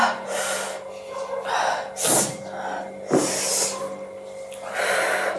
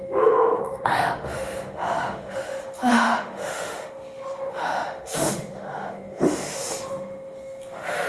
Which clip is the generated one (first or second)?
second